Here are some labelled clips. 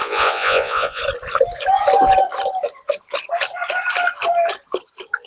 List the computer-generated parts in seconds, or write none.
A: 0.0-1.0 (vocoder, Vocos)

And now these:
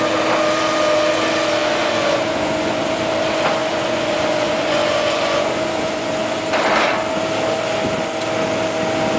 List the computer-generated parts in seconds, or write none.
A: 1.6-2.9 (vocoder, Vocos); 3.6-6.4

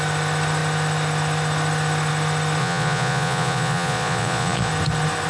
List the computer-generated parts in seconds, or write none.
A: 2.6-4.7 (vocoder, Vocos)

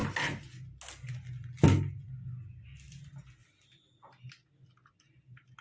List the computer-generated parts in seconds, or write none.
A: none

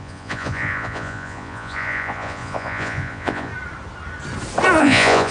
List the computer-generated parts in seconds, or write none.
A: 0.0-3.5 (vocoder, Vocos); 4.8-5.3

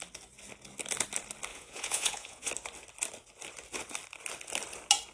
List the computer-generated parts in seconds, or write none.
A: 1.5-2.5 (vocoder, Vocos)

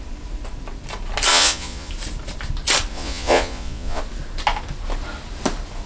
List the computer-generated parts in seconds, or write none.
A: 1.3-1.9 (vocoder, Vocos); 2.9-4.0